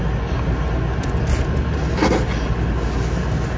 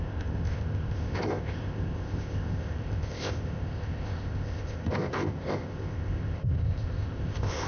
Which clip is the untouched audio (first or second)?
first